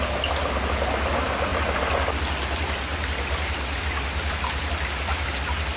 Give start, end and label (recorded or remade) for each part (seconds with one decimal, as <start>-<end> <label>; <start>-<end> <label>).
0.0-5.8 recorded